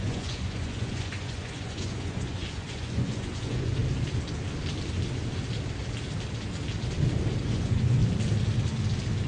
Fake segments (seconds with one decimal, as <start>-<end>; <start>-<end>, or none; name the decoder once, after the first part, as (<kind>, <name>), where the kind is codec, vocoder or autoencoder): 0.0-3.8 (vocoder, Vocos); 7.4-8.0